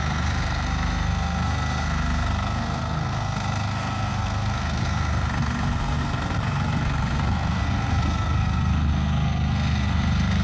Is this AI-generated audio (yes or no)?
yes